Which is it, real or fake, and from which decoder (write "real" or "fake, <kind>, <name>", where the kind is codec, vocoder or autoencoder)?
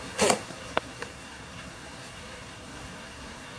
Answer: fake, codec, SNAC